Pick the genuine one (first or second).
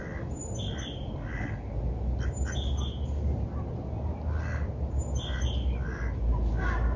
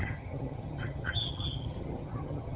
first